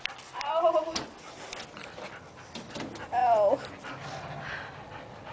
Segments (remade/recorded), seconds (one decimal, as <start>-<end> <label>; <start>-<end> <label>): 0.0-5.3 recorded